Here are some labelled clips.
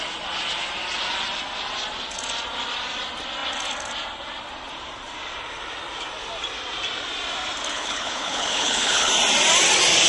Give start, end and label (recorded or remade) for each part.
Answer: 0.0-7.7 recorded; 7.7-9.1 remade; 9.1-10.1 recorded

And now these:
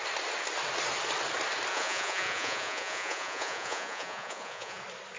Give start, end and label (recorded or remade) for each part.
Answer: 0.0-1.7 recorded; 1.7-4.8 remade; 4.8-5.2 recorded

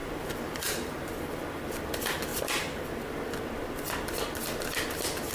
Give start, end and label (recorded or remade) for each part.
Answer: 0.0-1.1 remade; 1.1-2.3 recorded; 2.3-2.8 remade; 2.8-5.3 recorded

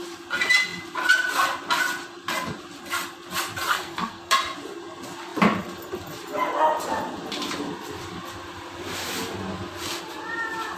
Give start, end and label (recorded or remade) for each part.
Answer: 0.0-3.7 recorded; 3.7-4.3 remade; 4.3-10.8 recorded